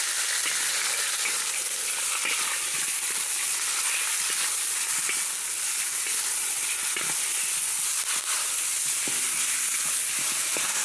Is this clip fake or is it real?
real